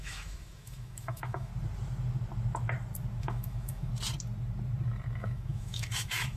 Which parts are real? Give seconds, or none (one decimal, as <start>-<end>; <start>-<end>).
1.5-3.2; 3.9-5.2